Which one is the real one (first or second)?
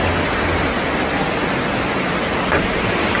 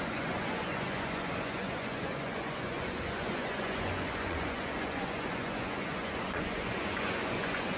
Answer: first